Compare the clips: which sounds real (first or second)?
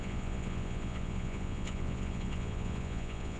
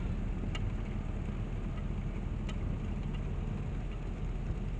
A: second